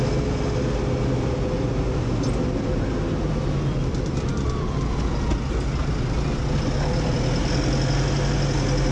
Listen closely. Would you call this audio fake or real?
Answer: real